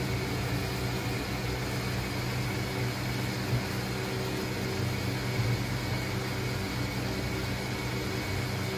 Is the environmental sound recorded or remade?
recorded